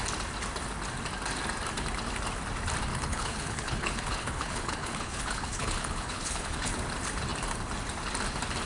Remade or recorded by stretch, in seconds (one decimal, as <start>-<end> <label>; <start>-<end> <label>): 0.0-2.9 recorded; 2.9-6.7 remade; 6.7-8.7 recorded